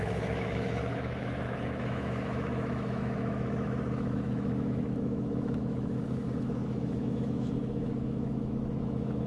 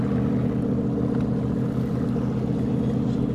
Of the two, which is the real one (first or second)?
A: second